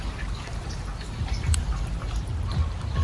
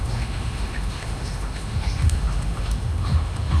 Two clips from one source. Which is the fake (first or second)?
second